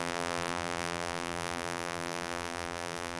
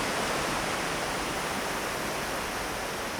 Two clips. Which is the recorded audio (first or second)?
second